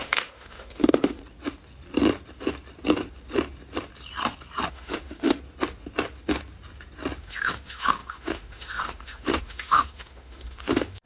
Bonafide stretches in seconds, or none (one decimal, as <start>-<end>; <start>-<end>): 1.2-4.7; 5.4-7.2